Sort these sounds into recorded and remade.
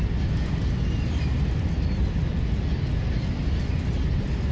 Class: recorded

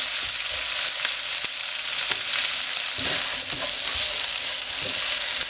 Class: recorded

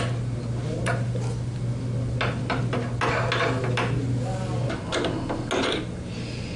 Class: recorded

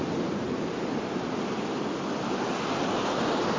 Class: recorded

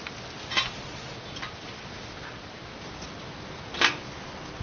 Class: recorded